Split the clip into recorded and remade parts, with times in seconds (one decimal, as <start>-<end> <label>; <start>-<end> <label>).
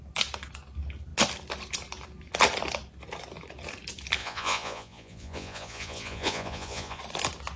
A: 0.0-4.2 recorded; 4.2-7.0 remade; 7.0-7.6 recorded